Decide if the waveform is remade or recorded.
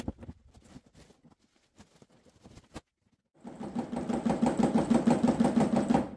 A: recorded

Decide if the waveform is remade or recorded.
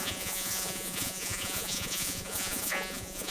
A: remade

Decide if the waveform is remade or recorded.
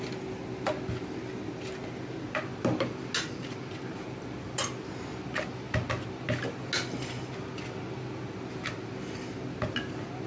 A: recorded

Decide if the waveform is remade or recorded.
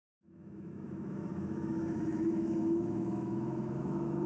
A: remade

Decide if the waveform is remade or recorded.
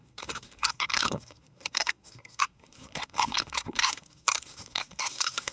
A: remade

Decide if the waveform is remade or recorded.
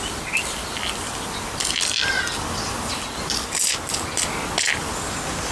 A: recorded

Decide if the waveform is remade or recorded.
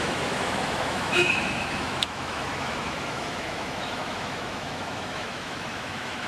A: remade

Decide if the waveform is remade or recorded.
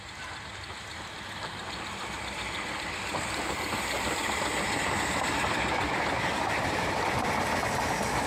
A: recorded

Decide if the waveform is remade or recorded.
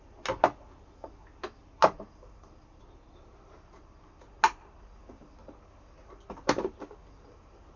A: recorded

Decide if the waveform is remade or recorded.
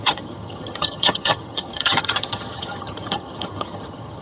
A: remade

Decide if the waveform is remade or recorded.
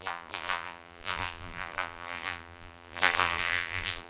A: remade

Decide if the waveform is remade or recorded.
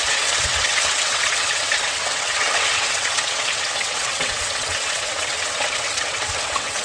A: remade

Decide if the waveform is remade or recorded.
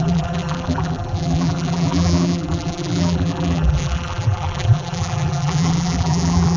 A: remade